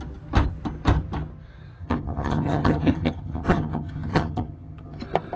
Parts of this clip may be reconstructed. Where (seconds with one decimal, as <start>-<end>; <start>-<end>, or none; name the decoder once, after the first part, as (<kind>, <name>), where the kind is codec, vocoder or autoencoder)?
1.8-5.0 (vocoder, HiFi-GAN)